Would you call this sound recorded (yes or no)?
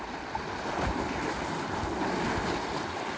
yes